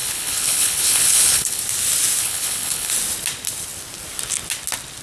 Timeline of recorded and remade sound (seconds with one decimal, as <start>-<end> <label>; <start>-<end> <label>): 0.0-1.6 remade; 1.6-2.2 recorded; 2.2-2.9 remade; 2.9-5.0 recorded